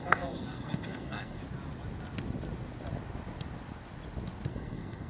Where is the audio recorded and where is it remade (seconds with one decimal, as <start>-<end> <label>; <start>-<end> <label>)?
0.0-1.4 remade; 1.4-4.5 recorded; 4.5-5.1 remade